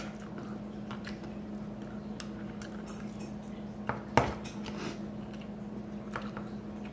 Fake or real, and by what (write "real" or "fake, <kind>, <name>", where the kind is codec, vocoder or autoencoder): real